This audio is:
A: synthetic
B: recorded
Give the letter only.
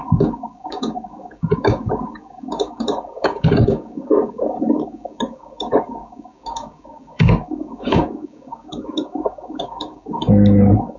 A